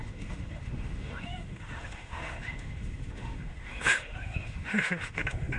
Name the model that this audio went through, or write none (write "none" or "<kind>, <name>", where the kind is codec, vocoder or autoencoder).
autoencoder, DAC-VAE